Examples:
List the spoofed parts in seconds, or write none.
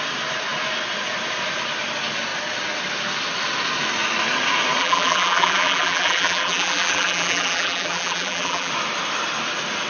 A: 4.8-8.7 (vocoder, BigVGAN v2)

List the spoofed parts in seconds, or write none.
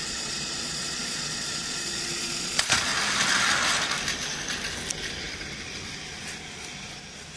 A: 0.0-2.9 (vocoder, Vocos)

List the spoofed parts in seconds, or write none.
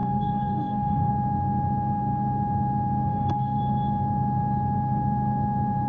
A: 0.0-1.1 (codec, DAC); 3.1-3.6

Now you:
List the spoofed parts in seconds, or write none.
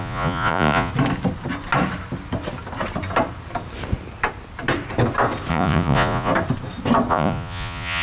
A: 0.0-0.9 (vocoder, Vocos); 5.5-6.3; 7.1-8.0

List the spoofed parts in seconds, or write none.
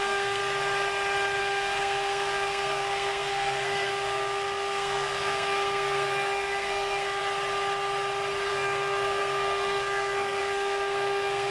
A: 0.0-0.4 (codec, SNAC); 1.4-7.2; 8.5-11.5